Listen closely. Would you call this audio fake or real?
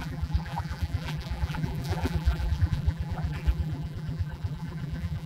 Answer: fake